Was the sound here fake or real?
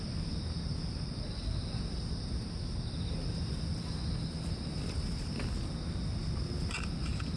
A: real